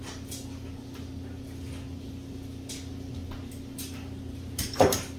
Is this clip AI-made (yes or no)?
no